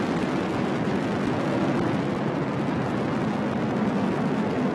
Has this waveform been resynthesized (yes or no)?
no